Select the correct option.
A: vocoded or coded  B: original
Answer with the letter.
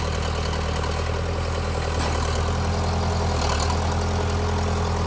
B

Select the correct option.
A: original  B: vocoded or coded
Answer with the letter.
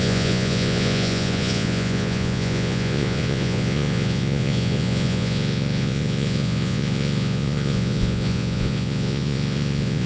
B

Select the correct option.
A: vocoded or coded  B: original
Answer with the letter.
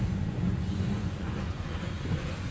A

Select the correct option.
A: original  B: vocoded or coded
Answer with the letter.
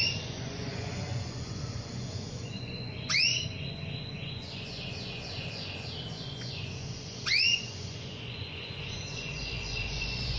B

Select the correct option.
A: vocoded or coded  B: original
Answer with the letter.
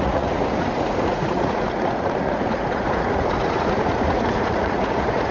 A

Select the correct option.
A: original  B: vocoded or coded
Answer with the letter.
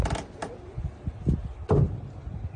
A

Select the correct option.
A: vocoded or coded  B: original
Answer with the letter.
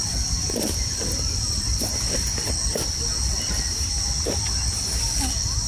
B